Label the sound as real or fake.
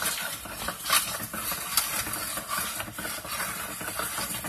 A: real